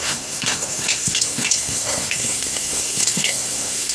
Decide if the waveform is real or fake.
fake